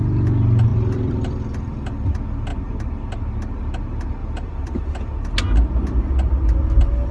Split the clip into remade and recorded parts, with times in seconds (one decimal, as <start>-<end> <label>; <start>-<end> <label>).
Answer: 0.0-0.7 recorded; 0.7-2.1 remade; 2.1-4.2 recorded; 4.2-4.9 remade; 4.9-7.1 recorded

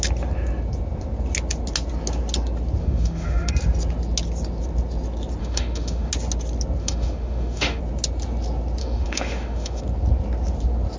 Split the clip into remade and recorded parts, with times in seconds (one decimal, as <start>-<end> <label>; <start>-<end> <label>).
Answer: 0.0-2.8 recorded; 2.8-3.5 remade; 3.5-5.4 recorded; 5.4-6.1 remade; 6.1-6.8 recorded; 6.8-7.8 remade; 7.8-8.8 recorded; 8.8-9.8 remade; 9.8-11.0 recorded

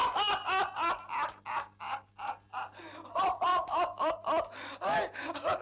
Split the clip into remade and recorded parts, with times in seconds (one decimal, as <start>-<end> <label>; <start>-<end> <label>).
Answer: 0.0-3.5 recorded; 3.5-4.1 remade; 4.1-5.6 recorded

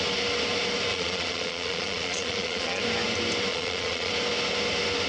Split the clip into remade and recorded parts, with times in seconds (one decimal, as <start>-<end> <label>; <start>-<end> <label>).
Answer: 0.0-0.9 recorded; 0.9-2.8 remade; 2.8-3.5 recorded; 3.5-4.1 remade; 4.1-5.1 recorded

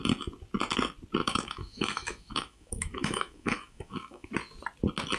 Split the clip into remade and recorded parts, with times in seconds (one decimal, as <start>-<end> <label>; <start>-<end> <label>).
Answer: 0.0-1.2 recorded; 1.2-4.3 remade; 4.3-5.2 recorded

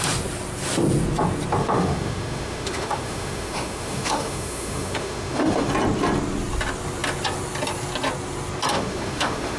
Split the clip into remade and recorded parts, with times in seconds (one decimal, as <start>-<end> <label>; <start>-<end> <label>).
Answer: 0.0-1.6 recorded; 1.6-5.7 remade; 5.7-8.7 recorded; 8.7-9.6 remade

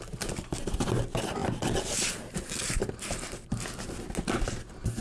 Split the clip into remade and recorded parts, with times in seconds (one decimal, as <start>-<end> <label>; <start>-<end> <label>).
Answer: 0.0-5.0 recorded

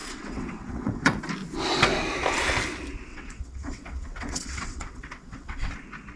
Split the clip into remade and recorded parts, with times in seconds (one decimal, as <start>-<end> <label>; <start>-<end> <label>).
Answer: 0.0-1.2 remade; 1.2-3.1 recorded; 3.1-5.7 remade; 5.7-6.2 recorded